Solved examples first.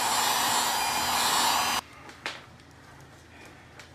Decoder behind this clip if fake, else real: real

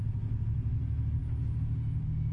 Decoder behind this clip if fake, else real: real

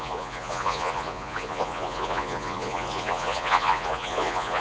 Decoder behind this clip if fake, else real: fake, vocoder, Vocos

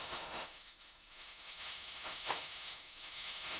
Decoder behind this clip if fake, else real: fake, autoencoder, DAC-VAE